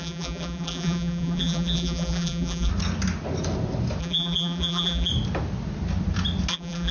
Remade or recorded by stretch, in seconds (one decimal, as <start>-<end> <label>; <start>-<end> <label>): 0.0-2.7 remade; 2.7-4.0 recorded; 4.0-5.1 remade; 5.1-6.5 recorded; 6.5-6.9 remade